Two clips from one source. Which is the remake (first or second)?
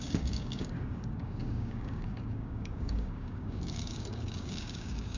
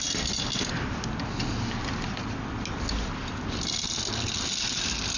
first